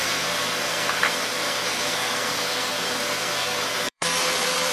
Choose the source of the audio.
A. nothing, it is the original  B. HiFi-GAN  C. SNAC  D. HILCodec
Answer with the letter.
C